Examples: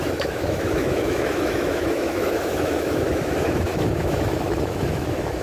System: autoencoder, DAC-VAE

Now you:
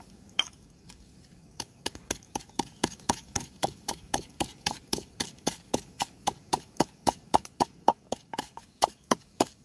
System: codec, DAC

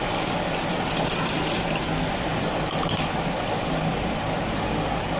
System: none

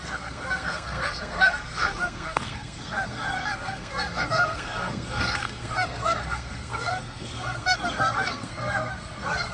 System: codec, SNAC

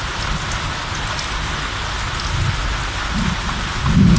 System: none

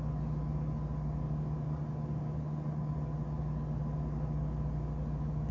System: none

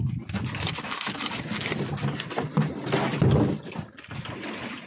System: none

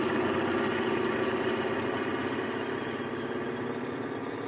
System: none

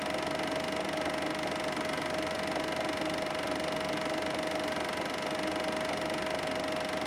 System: none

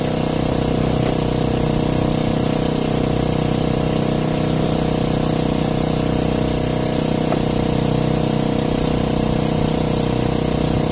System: none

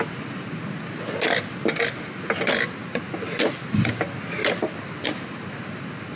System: none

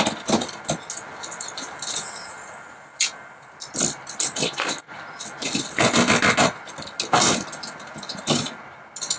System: none